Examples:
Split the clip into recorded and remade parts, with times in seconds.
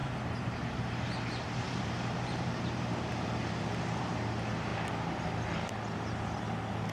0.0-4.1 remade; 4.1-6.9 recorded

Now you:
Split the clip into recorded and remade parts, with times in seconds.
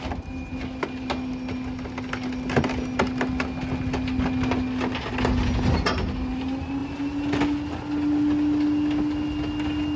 0.0-10.0 recorded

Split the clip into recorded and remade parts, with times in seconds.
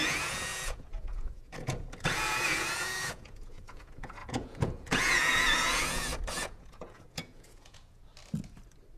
0.0-8.1 remade; 8.1-9.0 recorded